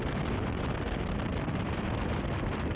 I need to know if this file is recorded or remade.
remade